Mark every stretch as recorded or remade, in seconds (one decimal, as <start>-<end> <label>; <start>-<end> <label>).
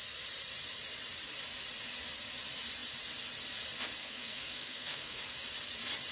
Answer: 0.0-4.0 recorded; 4.0-5.2 remade; 5.2-6.1 recorded